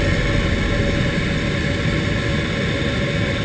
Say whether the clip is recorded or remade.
recorded